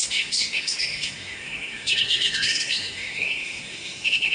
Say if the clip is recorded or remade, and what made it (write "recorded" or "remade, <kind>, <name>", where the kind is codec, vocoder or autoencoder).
remade, codec, SNAC